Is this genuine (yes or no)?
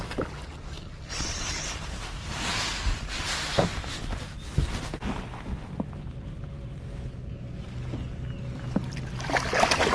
yes